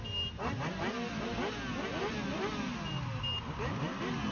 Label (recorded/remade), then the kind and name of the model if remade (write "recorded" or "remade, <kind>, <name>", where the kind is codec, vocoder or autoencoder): recorded